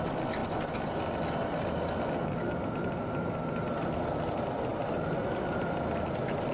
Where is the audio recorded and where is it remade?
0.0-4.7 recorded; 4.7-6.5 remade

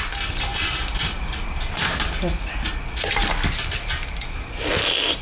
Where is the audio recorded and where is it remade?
0.0-0.5 recorded; 0.5-3.1 remade; 3.1-5.2 recorded